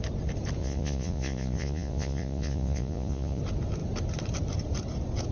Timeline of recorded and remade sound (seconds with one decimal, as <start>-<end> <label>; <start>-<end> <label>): 0.0-0.6 recorded; 0.6-3.4 remade; 3.4-5.3 recorded